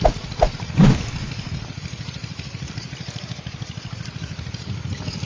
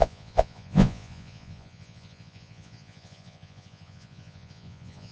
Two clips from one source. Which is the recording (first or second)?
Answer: first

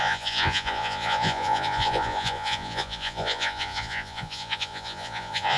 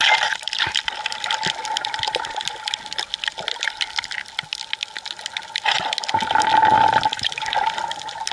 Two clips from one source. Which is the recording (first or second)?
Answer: second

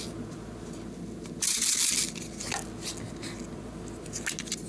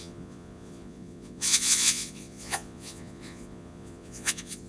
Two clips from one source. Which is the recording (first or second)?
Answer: first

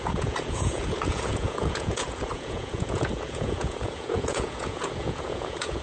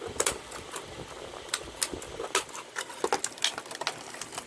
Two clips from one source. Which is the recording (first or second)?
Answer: second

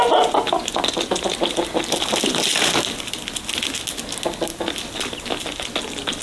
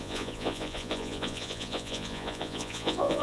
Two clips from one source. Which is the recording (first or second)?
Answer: first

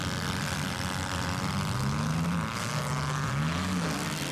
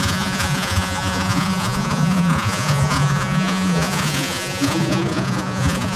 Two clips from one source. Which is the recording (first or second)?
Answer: first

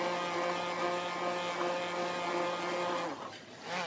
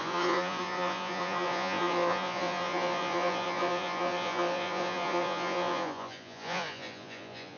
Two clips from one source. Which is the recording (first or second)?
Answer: first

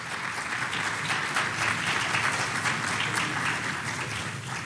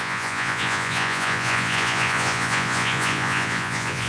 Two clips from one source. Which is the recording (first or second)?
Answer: first